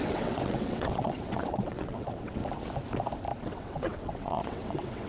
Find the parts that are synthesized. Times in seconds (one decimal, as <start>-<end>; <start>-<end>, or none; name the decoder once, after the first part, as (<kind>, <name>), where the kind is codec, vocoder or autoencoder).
0.0-2.4 (vocoder, WaveNeXt); 3.4-5.1